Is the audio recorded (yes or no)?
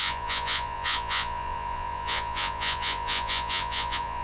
no